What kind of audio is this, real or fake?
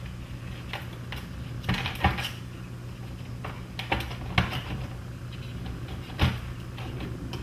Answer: real